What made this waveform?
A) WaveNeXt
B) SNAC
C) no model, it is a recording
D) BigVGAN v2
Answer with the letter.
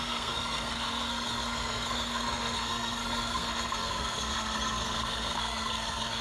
B